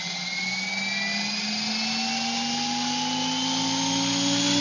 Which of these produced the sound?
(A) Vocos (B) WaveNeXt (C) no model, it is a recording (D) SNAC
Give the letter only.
C